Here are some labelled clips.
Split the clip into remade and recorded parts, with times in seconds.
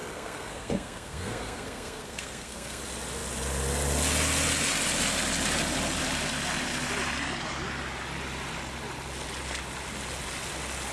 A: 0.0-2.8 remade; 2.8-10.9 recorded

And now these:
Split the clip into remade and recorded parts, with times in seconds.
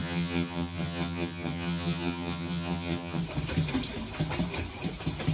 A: 0.0-3.2 remade; 3.2-5.3 recorded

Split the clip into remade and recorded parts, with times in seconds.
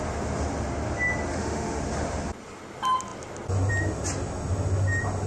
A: 0.0-1.3 recorded; 1.3-1.8 remade; 1.8-5.3 recorded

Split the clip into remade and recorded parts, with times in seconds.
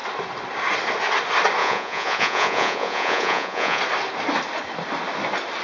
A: 0.0-1.6 recorded; 1.6-3.8 remade; 3.8-5.6 recorded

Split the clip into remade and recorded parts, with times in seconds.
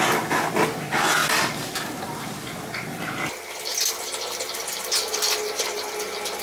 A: 0.0-6.4 recorded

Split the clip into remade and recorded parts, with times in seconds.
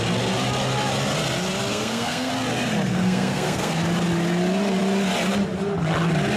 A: 0.0-1.7 recorded; 1.7-2.3 remade; 2.3-2.9 recorded; 2.9-3.7 remade; 3.7-6.4 recorded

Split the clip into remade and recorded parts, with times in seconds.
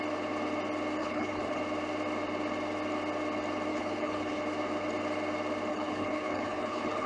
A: 0.0-1.0 recorded; 1.0-1.6 remade; 1.6-3.7 recorded; 3.7-4.4 remade; 4.4-5.7 recorded; 5.7-7.1 remade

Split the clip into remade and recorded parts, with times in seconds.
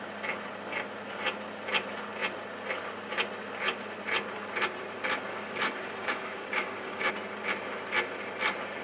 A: 0.0-5.3 recorded; 5.3-7.1 remade; 7.1-8.8 recorded